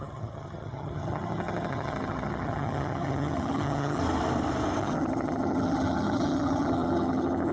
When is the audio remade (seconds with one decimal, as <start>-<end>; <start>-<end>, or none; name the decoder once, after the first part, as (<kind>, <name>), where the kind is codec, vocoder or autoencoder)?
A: 0.0-4.0 (vocoder, HiFi-GAN); 4.8-7.5